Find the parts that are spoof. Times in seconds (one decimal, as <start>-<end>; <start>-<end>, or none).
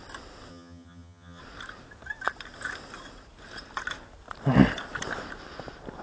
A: 0.5-1.4